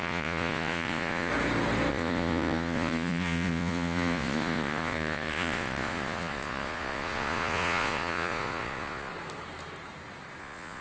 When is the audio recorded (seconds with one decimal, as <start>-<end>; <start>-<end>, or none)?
1.3-1.9; 9.1-10.4